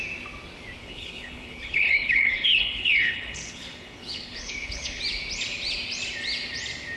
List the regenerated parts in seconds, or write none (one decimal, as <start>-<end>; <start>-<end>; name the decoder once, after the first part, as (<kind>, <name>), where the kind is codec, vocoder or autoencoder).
0.8-5.0 (codec, HILCodec)